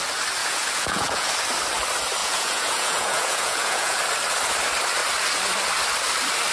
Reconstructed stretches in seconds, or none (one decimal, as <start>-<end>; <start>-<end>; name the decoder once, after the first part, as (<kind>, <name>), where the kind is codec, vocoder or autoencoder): 0.4-1.3 (vocoder, Vocos); 2.2-4.0